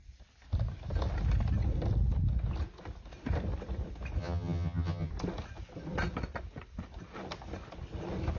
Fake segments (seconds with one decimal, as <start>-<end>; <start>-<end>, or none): 4.2-5.1